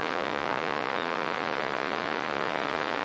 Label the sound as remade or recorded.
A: remade